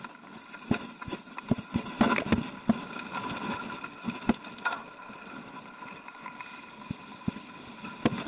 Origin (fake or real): real